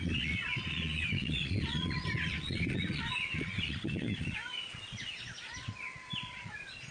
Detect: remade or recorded remade